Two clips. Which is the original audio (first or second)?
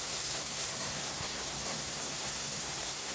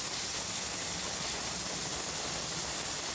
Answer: second